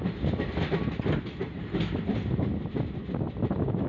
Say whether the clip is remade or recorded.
recorded